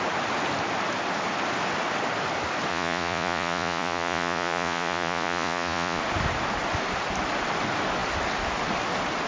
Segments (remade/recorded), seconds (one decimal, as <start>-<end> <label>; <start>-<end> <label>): 0.0-2.7 recorded; 2.7-6.0 remade; 6.0-9.3 recorded